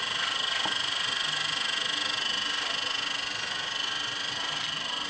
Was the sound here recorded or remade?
recorded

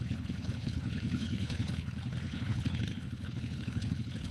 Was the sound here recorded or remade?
remade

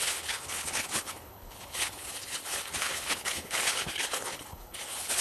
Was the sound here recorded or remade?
remade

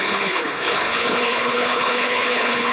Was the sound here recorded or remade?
remade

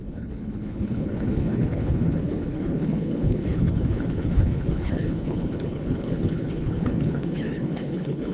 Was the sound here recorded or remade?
remade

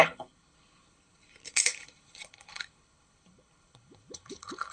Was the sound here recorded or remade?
remade